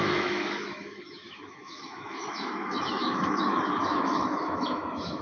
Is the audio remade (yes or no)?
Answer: yes